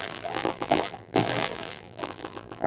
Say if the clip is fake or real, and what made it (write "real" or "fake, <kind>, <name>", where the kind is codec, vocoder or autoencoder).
fake, vocoder, BigVGAN v2